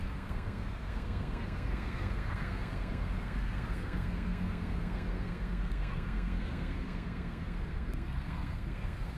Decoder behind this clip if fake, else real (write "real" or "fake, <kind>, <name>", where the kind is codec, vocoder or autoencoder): fake, codec, SNAC